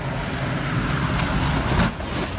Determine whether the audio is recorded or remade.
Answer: recorded